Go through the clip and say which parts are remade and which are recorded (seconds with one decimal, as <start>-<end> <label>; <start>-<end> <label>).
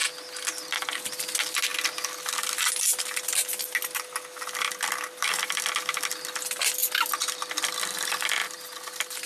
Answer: 0.0-9.3 recorded